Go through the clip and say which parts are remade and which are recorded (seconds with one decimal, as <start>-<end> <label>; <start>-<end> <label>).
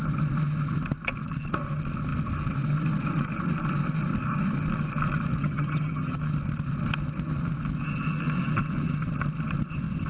0.0-5.4 recorded; 5.4-6.2 remade; 6.2-10.1 recorded